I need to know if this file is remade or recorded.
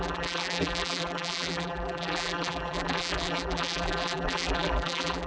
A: remade